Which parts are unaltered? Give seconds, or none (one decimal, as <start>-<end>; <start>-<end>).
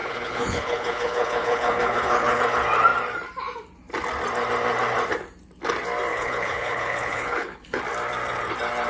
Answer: 2.4-6.1; 7.8-8.9